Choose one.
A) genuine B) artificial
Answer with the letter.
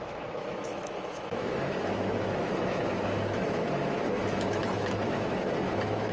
B